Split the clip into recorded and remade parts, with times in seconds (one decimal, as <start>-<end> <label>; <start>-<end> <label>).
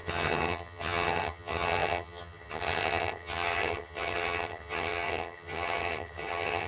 0.0-6.7 remade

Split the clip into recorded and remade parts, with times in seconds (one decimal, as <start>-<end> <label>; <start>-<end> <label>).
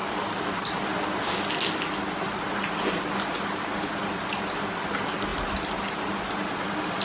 0.0-7.0 recorded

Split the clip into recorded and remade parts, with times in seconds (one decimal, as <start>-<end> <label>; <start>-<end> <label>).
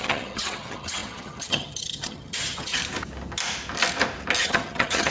0.0-2.8 remade; 2.8-4.4 recorded; 4.4-5.1 remade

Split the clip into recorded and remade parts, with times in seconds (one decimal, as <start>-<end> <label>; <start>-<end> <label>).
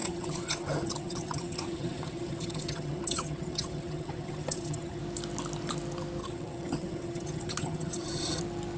0.0-5.0 remade; 5.0-6.2 recorded; 6.2-8.4 remade; 8.4-8.8 recorded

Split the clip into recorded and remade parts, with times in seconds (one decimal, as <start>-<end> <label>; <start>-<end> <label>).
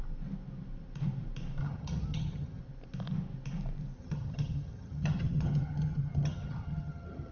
0.0-1.6 recorded; 1.6-2.6 remade; 2.6-4.0 recorded; 4.0-7.3 remade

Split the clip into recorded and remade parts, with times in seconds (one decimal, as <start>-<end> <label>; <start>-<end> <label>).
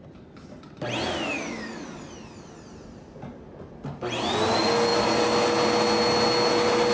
0.0-6.9 recorded